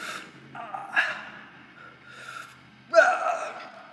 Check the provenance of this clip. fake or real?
real